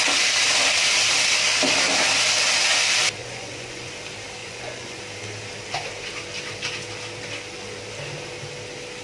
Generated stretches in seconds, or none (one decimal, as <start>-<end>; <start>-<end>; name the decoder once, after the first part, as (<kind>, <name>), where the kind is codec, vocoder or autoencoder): 3.2-3.9 (vocoder, Vocos); 4.4-5.0